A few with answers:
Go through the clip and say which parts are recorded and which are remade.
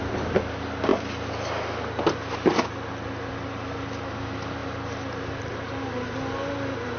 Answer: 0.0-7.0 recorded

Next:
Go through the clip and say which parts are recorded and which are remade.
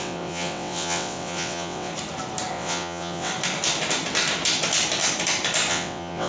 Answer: 0.0-1.9 remade; 1.9-2.5 recorded; 2.5-3.3 remade; 3.3-5.7 recorded; 5.7-6.3 remade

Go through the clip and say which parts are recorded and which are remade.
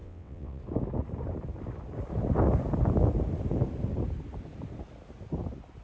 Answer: 0.0-0.6 remade; 0.6-5.8 recorded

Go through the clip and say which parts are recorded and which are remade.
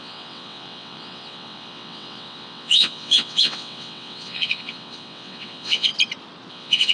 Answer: 0.0-5.9 remade; 5.9-6.5 recorded; 6.5-6.9 remade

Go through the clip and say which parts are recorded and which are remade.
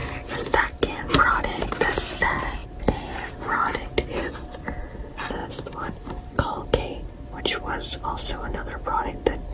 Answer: 0.0-9.5 recorded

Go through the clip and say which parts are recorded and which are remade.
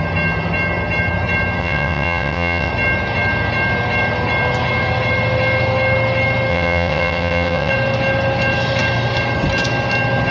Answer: 0.0-1.6 recorded; 1.6-2.7 remade; 2.7-6.5 recorded; 6.5-7.7 remade; 7.7-10.3 recorded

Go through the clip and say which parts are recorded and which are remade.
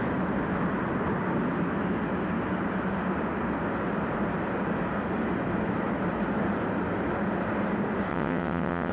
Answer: 0.0-8.1 recorded; 8.1-8.9 remade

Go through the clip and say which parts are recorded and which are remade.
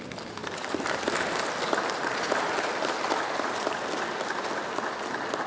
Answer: 0.0-5.5 recorded